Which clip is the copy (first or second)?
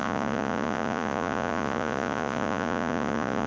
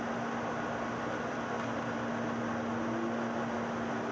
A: first